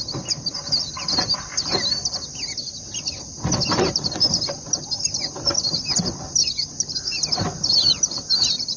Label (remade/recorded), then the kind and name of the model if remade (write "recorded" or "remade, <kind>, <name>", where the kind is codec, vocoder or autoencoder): recorded